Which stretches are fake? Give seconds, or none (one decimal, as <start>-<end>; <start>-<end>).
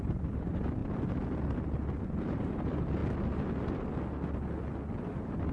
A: 0.0-0.8; 2.2-3.0; 5.0-5.5